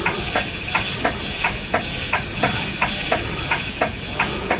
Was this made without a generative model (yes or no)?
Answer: yes